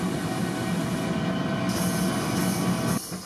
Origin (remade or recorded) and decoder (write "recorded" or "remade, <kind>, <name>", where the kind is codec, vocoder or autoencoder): recorded